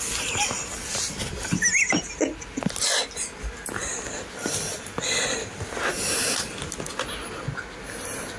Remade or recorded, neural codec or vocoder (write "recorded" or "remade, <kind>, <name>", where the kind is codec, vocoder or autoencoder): recorded